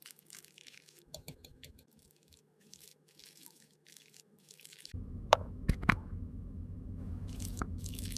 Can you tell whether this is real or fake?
fake